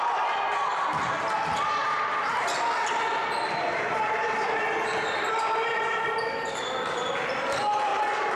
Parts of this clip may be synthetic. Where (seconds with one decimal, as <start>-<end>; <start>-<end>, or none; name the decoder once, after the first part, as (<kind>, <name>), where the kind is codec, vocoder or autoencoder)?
3.1-6.6 (vocoder, BigVGAN v2); 7.9-8.4